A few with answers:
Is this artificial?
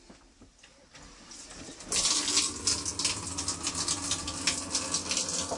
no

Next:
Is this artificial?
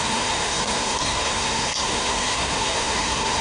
yes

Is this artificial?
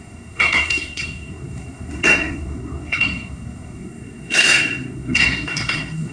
yes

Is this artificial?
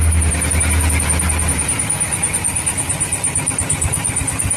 no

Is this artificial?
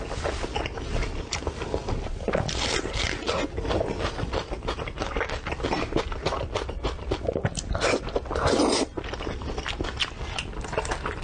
no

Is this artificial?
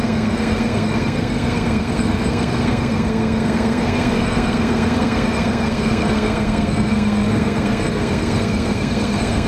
yes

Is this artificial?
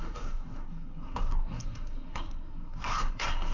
yes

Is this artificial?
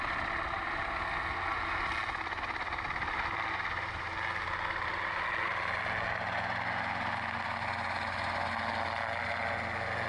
no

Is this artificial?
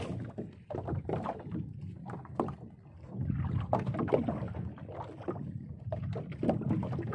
no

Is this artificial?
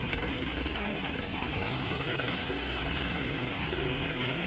yes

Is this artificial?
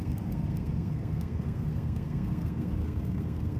yes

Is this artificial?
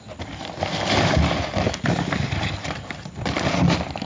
no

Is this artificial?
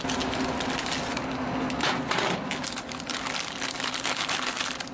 no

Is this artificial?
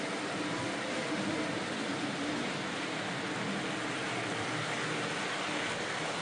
no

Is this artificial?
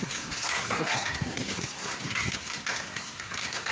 yes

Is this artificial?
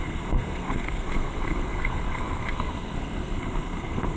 yes